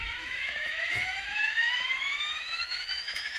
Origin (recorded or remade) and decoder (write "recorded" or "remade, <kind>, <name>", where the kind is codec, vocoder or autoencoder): remade, autoencoder, DAC-VAE